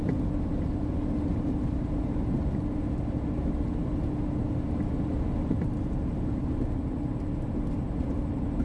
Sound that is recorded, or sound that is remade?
recorded